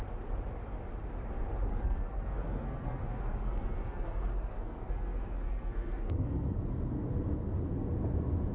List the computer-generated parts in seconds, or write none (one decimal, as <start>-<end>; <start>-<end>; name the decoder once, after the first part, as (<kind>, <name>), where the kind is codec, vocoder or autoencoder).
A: 1.7-6.6 (codec, SNAC)